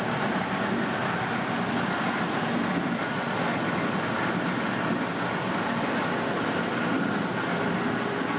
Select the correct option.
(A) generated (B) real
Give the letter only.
B